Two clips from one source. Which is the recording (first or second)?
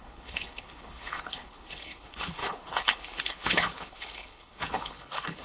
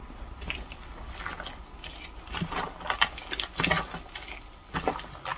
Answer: second